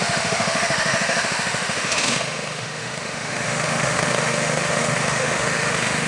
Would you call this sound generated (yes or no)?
yes